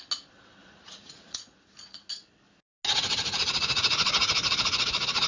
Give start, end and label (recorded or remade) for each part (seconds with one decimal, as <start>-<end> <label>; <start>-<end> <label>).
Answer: 0.0-0.6 recorded; 0.6-2.1 remade; 2.1-5.3 recorded

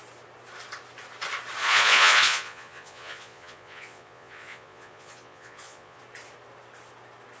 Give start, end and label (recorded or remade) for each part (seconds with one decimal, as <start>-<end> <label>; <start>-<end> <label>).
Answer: 0.0-1.6 recorded; 1.6-6.0 remade; 6.0-7.4 recorded

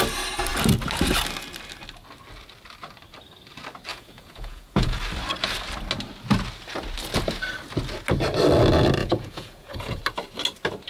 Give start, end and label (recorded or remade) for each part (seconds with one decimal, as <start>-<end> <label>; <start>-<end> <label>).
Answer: 0.0-3.9 recorded; 3.9-5.0 remade; 5.0-9.0 recorded; 9.0-10.0 remade; 10.0-10.9 recorded

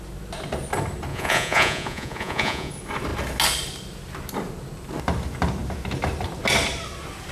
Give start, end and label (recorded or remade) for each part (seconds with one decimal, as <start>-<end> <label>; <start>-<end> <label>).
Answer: 0.0-1.1 recorded; 1.1-2.7 remade; 2.7-7.3 recorded

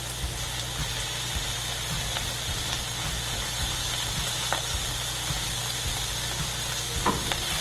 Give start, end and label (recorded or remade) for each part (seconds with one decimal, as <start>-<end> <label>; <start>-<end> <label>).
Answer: 0.0-7.6 recorded